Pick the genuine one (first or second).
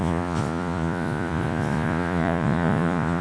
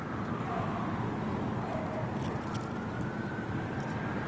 second